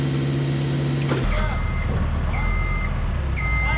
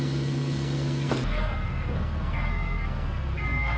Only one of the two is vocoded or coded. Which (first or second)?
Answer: second